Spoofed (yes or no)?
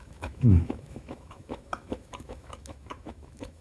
yes